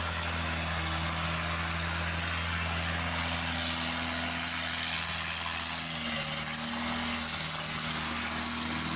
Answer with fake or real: real